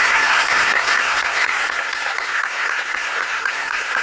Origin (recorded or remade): remade